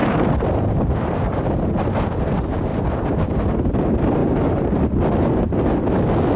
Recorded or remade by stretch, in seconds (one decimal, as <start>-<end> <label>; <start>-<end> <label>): 0.0-2.7 recorded; 2.7-3.6 remade; 3.6-4.2 recorded; 4.2-5.0 remade; 5.0-6.4 recorded